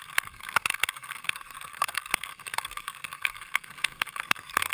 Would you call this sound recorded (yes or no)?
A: no